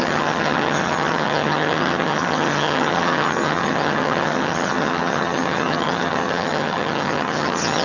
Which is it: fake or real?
fake